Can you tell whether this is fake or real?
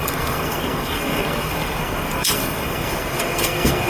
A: fake